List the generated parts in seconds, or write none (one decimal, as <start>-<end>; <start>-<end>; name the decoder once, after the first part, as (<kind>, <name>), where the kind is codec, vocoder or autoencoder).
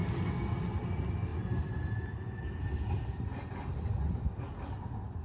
none